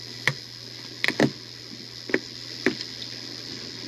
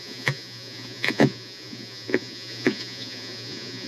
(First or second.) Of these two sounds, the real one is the first